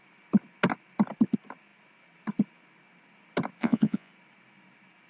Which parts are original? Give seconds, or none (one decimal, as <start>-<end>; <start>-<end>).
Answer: 0.0-3.6; 4.1-5.1